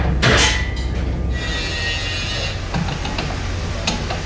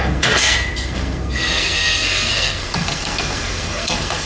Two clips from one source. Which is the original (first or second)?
first